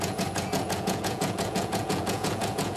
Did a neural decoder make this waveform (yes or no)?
yes